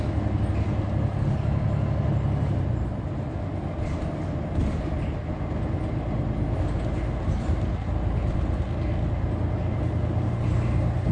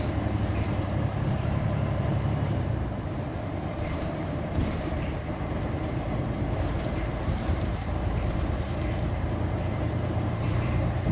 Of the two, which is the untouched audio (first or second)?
first